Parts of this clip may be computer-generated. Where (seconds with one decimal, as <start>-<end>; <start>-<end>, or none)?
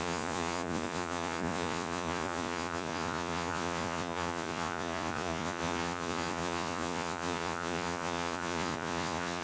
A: 0.0-9.4